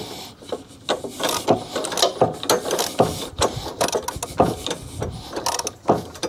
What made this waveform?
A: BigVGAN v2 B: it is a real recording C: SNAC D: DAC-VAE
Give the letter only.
B